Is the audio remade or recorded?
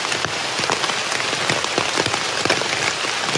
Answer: recorded